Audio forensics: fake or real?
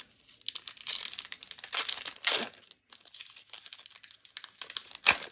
real